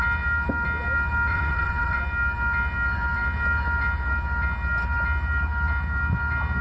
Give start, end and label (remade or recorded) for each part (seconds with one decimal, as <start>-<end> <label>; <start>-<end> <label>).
0.0-1.3 recorded; 1.3-2.0 remade; 2.0-6.6 recorded